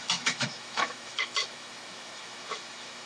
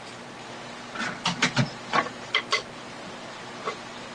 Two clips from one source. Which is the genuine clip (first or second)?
second